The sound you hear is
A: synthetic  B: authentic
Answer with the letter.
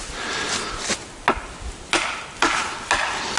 B